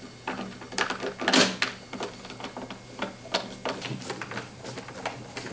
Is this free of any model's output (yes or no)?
yes